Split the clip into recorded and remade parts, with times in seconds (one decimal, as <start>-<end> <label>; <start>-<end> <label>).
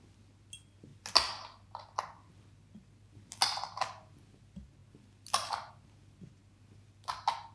0.0-7.5 recorded